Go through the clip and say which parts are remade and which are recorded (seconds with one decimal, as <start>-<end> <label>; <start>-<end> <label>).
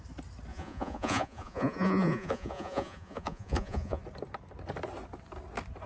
0.0-0.5 recorded; 0.5-4.0 remade; 4.0-5.9 recorded